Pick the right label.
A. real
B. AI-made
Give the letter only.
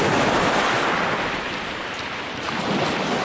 A